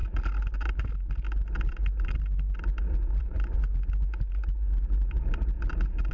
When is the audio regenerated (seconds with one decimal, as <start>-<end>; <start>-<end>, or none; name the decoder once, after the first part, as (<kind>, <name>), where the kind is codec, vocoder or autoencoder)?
3.2-3.7 (vocoder, Vocos)